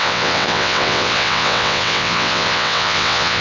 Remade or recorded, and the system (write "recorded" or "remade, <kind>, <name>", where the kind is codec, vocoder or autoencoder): remade, vocoder, WaveNeXt